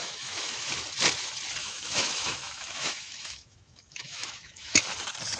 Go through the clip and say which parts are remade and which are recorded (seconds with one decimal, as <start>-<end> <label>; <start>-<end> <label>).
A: 0.0-0.7 remade; 0.7-1.6 recorded; 1.6-4.8 remade; 4.8-5.4 recorded